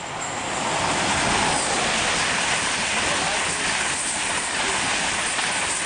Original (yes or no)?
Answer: yes